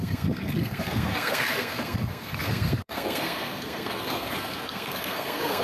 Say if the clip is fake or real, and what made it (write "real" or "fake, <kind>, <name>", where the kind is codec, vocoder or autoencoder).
fake, codec, SNAC